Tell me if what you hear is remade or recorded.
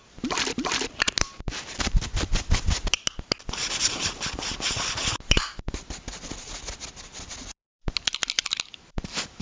recorded